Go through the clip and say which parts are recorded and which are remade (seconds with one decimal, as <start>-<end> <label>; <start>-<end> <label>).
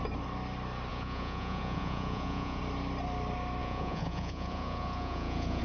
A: 0.0-0.9 recorded; 0.9-2.6 remade; 2.6-3.6 recorded; 3.6-5.6 remade